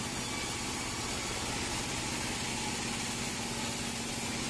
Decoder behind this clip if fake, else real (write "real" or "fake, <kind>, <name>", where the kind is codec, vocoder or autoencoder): real